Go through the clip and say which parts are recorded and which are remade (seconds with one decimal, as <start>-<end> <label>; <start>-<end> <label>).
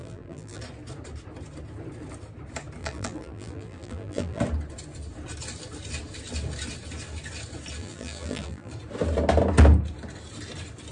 0.0-0.6 remade; 0.6-2.8 recorded; 2.8-4.4 remade; 4.4-7.8 recorded; 7.8-8.7 remade; 8.7-10.9 recorded